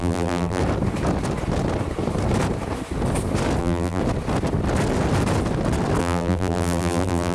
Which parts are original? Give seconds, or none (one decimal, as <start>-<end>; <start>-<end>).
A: 0.6-3.6; 4.0-6.0